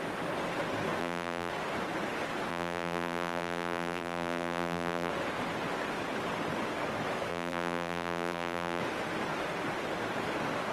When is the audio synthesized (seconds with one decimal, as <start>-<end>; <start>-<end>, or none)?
1.0-1.5; 2.5-5.1; 7.3-8.8